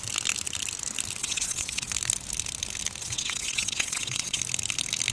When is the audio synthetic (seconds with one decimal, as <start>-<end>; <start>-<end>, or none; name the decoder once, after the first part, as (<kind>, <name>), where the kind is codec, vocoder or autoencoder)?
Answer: 1.2-1.9 (vocoder, WaveNeXt); 3.0-4.4